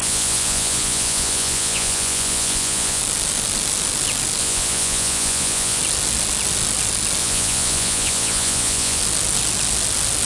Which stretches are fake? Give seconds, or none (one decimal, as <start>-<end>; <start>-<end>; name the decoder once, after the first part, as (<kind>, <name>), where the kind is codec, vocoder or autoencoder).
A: 0.0-3.0 (vocoder, Vocos); 4.4-5.8; 7.2-9.0